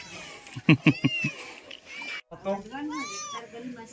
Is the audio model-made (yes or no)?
no